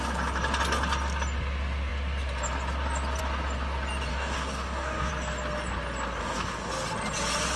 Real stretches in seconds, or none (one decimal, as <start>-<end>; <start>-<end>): 0.0-4.1; 5.1-6.2; 6.7-7.6